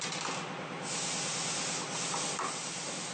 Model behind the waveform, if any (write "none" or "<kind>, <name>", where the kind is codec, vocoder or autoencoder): none